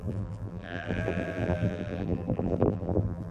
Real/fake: fake